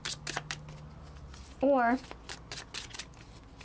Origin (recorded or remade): recorded